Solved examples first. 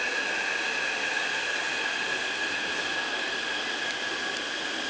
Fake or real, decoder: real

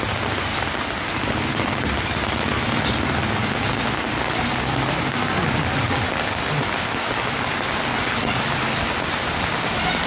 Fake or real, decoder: real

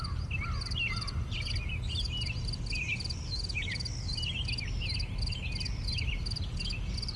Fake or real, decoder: real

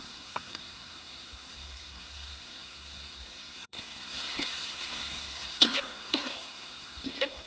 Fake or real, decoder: fake, codec, SNAC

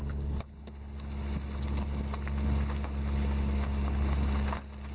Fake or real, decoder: real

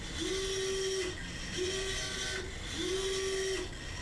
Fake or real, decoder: real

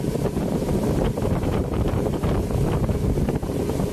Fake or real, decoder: fake, vocoder, BigVGAN v2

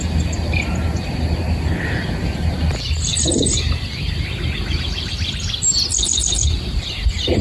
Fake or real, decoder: real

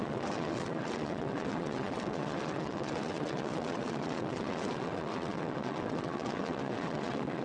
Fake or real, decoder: fake, vocoder, WaveNeXt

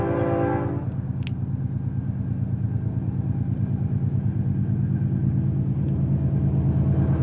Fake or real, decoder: real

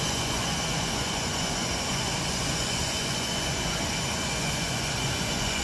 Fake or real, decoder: fake, vocoder, Vocos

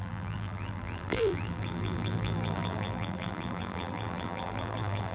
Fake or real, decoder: fake, vocoder, BigVGAN v2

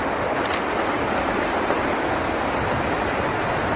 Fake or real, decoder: real